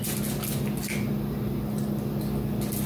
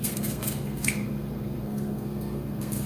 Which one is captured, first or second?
first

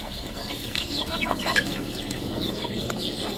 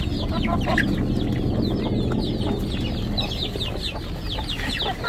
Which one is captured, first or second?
second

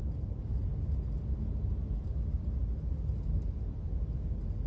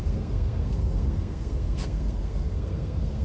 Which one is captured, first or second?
first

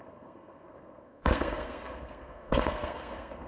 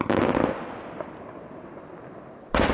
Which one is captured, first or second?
second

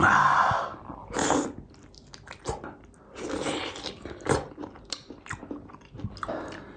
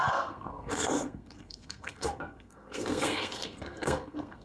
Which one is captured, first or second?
first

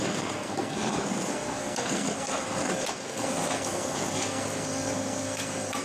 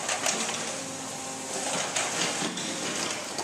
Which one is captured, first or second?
second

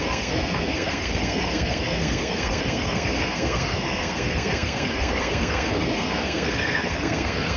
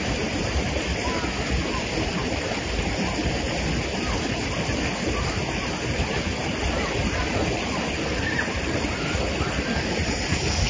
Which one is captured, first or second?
second